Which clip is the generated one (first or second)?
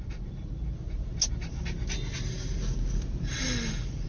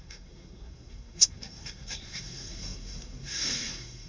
second